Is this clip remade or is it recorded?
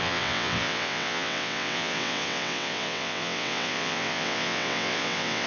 remade